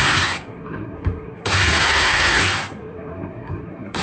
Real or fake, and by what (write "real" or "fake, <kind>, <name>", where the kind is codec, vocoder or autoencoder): fake, codec, SNAC